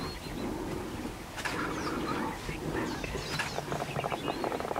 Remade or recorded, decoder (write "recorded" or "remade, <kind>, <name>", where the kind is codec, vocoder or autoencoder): recorded